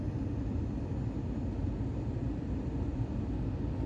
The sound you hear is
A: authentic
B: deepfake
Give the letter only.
A